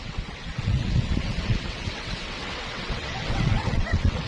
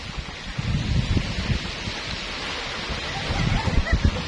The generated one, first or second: first